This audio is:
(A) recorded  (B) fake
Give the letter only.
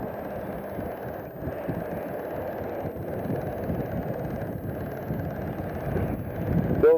A